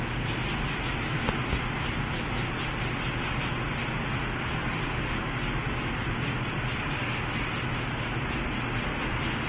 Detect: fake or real real